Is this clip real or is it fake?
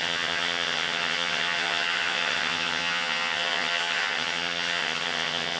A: fake